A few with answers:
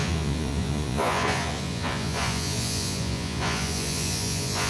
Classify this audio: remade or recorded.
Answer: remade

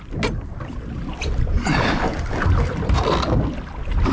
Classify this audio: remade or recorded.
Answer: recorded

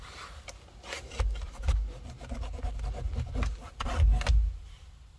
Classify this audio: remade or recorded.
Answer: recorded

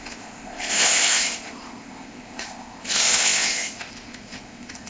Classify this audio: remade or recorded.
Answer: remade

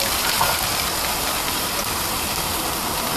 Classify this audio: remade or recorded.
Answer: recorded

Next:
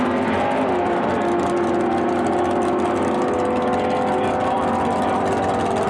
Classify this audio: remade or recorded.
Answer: recorded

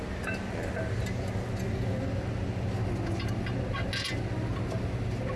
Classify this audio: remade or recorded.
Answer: recorded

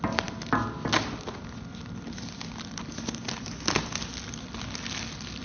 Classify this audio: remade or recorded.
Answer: recorded